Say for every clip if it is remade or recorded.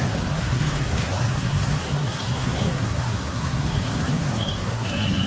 remade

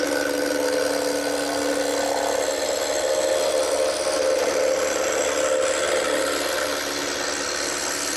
recorded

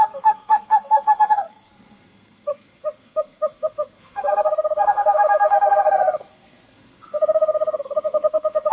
remade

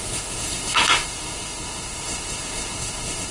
remade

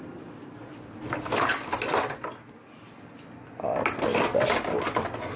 recorded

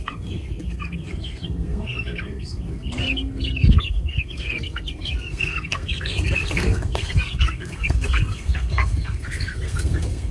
remade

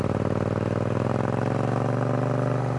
recorded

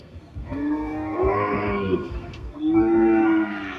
remade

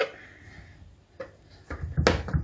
recorded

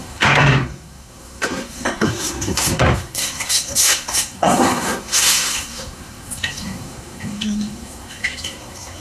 remade